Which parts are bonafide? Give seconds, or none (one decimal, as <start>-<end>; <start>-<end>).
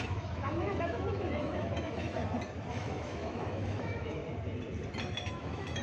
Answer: 2.2-2.7; 4.2-5.3